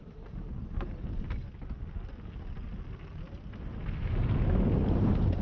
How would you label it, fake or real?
real